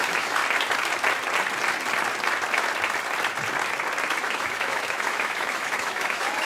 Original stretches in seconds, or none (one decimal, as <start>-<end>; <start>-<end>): 0.4-4.2